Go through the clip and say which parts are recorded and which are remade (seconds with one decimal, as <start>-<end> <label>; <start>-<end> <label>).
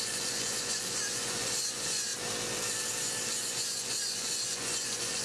0.0-2.1 remade; 2.1-3.4 recorded; 3.4-5.2 remade